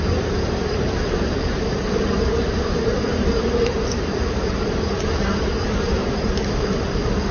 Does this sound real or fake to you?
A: fake